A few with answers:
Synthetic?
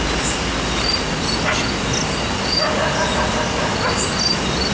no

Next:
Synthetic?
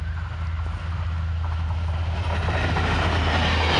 no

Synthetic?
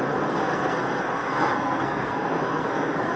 yes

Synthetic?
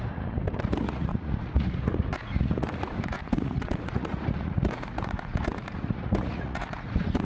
yes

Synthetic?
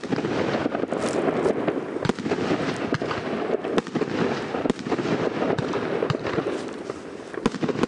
no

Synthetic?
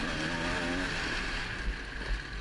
no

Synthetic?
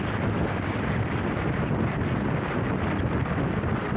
no